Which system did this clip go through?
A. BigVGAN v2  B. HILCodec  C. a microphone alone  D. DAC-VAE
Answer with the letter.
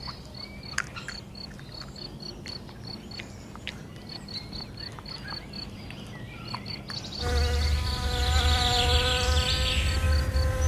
C